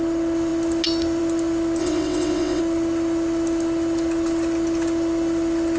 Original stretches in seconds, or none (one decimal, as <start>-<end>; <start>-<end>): 0.0-1.8; 2.6-5.8